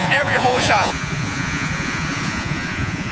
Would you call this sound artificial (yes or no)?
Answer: yes